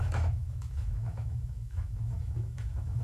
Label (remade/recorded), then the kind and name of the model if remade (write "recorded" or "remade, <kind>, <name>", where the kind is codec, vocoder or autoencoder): remade, autoencoder, DAC-VAE